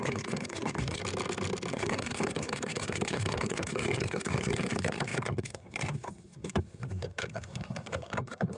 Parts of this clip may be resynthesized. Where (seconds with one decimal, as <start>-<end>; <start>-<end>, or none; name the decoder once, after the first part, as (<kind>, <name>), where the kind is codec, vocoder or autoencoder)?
0.0-1.0 (codec, SNAC); 1.7-8.6